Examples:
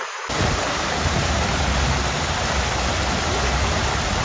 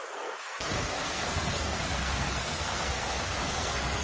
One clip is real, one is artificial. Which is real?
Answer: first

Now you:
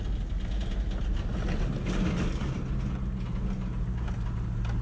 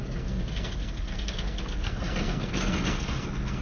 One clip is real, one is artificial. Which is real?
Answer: first